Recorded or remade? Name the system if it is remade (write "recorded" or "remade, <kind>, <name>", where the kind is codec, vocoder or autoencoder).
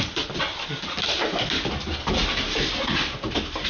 recorded